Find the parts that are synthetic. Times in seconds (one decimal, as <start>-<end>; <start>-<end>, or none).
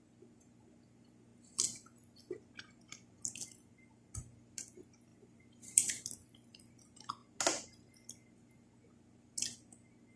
5.1-6.6